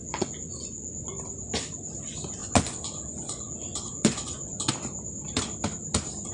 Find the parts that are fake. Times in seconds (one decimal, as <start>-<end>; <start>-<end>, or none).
0.0-1.1; 2.4-4.7